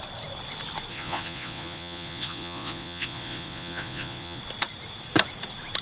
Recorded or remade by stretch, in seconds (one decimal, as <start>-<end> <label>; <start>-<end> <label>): 0.0-0.9 recorded; 0.9-4.4 remade; 4.4-5.8 recorded